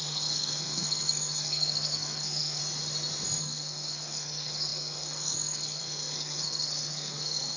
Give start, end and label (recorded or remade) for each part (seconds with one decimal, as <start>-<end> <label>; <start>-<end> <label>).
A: 0.0-2.6 remade; 2.6-3.4 recorded; 3.4-7.6 remade